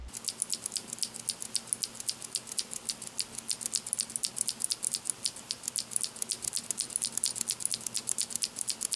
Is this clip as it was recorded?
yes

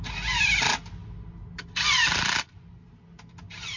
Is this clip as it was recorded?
yes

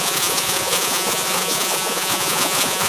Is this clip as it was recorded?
no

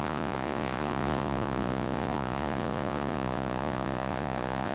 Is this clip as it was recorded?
no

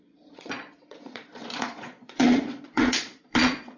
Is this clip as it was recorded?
no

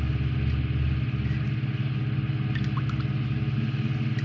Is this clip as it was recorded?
yes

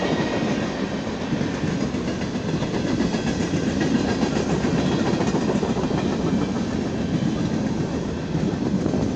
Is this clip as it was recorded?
yes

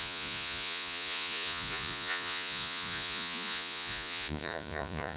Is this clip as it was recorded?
no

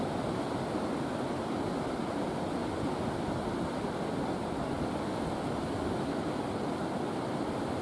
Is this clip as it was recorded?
yes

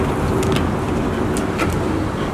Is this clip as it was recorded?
yes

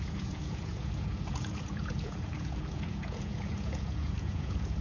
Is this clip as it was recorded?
no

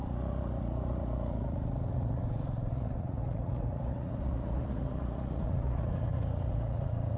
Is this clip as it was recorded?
no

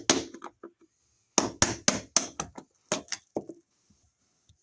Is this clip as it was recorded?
yes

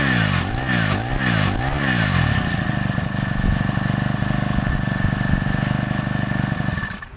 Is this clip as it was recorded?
yes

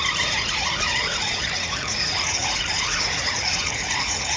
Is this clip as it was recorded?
no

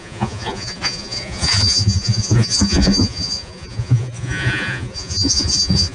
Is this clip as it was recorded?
no